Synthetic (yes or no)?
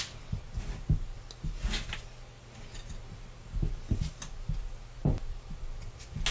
no